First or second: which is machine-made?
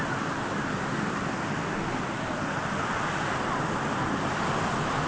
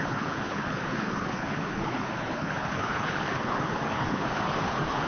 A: second